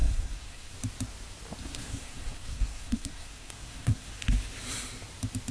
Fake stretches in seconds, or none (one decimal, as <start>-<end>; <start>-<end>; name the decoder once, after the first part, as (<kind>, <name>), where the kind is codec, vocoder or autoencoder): 0.0-0.7 (codec, SNAC); 1.6-4.2